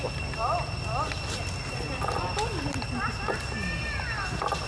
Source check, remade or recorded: recorded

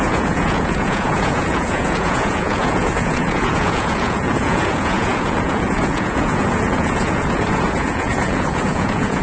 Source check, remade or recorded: remade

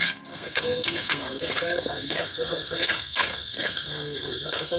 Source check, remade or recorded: remade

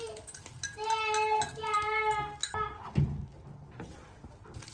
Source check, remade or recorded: recorded